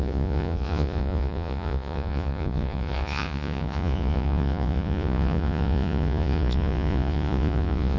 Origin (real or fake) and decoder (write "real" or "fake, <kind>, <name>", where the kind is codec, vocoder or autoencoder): fake, vocoder, Vocos